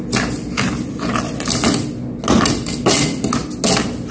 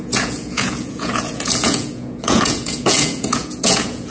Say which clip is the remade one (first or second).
second